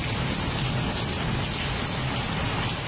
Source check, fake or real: real